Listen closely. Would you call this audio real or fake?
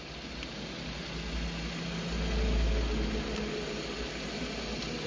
real